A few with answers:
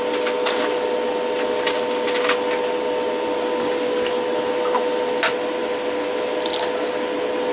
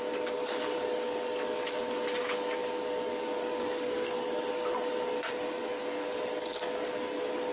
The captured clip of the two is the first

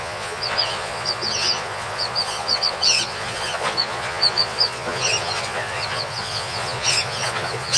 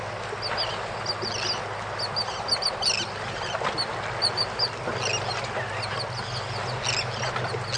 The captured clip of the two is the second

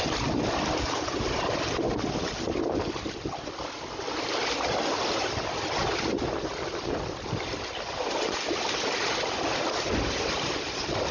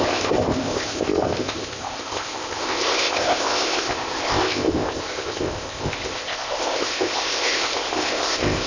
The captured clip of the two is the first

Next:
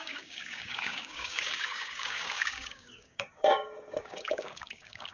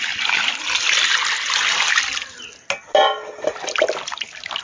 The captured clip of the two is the second